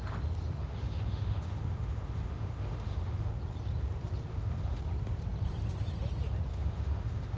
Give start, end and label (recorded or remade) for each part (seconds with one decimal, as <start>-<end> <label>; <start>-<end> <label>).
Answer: 0.0-0.6 recorded; 0.6-3.3 remade; 3.3-4.3 recorded; 4.3-4.8 remade; 4.8-6.5 recorded; 6.5-7.4 remade